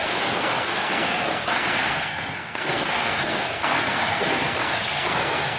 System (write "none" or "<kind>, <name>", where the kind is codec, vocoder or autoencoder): codec, SNAC